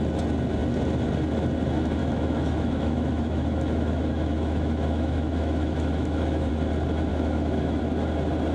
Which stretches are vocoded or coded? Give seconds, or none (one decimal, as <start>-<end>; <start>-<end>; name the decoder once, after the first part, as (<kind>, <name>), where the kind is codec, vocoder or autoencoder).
2.0-6.5 (autoencoder, DAC-VAE); 7.1-7.8